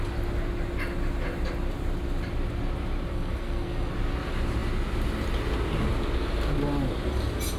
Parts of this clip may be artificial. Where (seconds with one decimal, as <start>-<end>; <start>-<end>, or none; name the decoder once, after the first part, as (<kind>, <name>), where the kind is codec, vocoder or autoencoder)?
3.1-3.9 (codec, SNAC)